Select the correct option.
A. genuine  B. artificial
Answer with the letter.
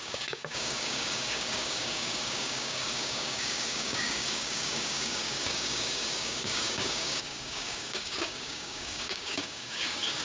B